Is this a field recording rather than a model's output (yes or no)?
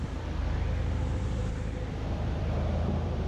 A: no